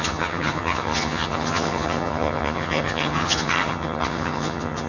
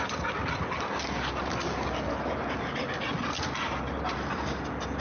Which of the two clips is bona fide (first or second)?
second